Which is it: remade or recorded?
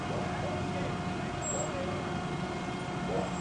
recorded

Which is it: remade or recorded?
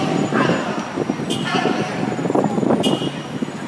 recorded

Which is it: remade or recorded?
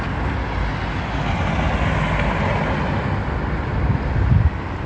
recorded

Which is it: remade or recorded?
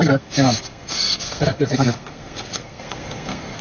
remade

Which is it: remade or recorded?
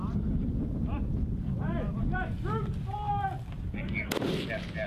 recorded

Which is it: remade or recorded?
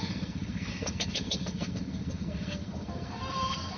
remade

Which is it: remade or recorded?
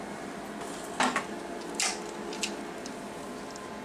recorded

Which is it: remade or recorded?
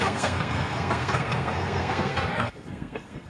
remade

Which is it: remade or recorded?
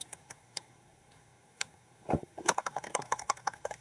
remade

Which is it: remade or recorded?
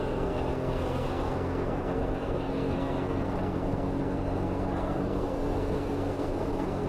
remade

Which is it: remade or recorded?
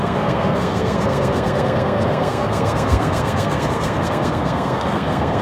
remade